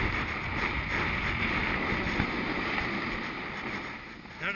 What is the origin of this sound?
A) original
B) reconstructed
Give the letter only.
A